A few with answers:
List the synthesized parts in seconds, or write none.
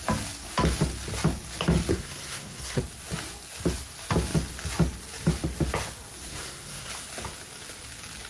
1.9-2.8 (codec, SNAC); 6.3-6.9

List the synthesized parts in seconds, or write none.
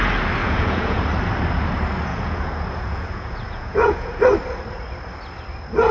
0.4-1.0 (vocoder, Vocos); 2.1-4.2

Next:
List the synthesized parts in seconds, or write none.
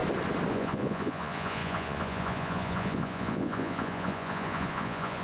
0.5-5.2 (vocoder, Vocos)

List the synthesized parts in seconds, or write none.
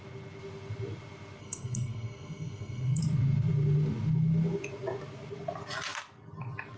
1.4-3.0 (codec, SNAC)